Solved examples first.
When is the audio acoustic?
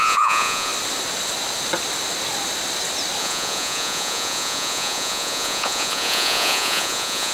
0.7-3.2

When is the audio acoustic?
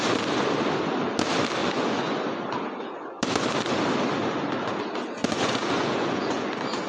0.0-1.6; 2.2-5.2; 6.5-6.9